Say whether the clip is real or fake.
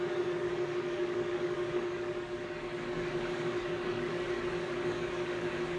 fake